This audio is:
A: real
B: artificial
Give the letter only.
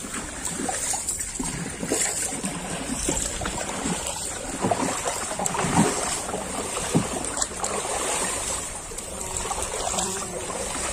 B